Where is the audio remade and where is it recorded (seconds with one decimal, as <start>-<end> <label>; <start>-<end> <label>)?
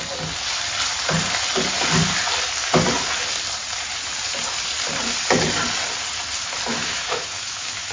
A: 0.0-6.7 recorded; 6.7-7.9 remade